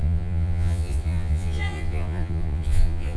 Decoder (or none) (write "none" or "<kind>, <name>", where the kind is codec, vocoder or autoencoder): vocoder, Vocos